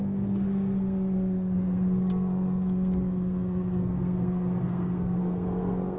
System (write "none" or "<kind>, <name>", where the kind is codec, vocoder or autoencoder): codec, SNAC